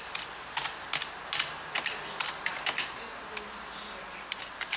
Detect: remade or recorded remade